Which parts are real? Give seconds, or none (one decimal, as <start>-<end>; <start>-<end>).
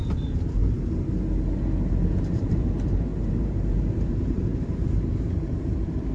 0.6-1.9